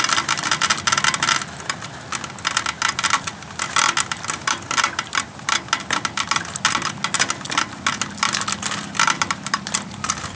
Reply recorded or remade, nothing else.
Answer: recorded